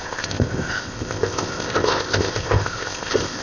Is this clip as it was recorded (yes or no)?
no